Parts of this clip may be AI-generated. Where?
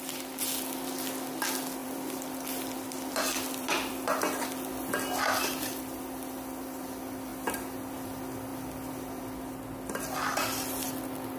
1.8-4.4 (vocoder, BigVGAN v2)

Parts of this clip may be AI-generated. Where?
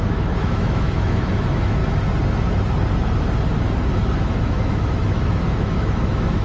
0.0-1.8 (autoencoder, DAC-VAE); 4.1-6.4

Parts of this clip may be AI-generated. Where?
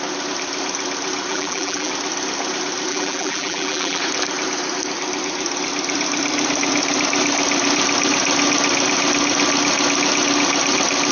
1.3-1.9 (vocoder, BigVGAN v2); 2.9-4.0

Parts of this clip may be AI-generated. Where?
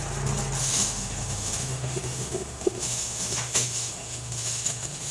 0.6-5.1 (autoencoder, DAC-VAE)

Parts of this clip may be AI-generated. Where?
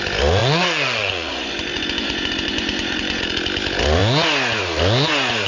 0.4-3.2 (vocoder, Vocos)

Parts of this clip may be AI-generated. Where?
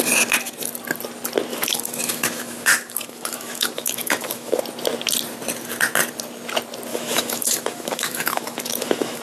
1.5-4.6 (autoencoder, DAC-VAE); 6.9-9.2